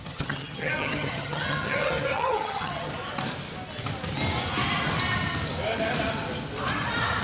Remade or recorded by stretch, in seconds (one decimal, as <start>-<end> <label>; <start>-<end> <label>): 0.0-2.9 remade; 2.9-7.2 recorded